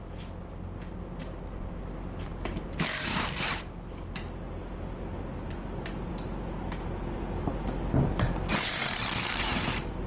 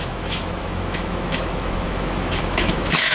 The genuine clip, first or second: first